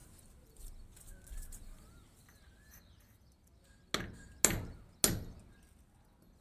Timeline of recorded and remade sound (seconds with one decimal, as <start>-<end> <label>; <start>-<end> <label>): 0.0-6.4 recorded